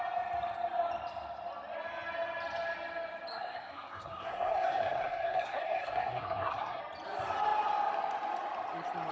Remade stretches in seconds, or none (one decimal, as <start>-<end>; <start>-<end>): 3.3-6.8